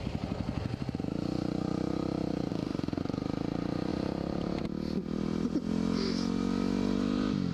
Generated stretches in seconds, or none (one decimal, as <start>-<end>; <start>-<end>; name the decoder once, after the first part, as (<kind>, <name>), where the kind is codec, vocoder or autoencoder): 2.5-3.0 (autoencoder, DAC-VAE)